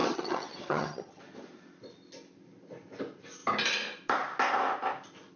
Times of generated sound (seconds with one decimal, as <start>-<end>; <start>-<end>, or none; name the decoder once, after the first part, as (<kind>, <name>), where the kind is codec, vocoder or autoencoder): 0.0-1.2 (vocoder, HiFi-GAN)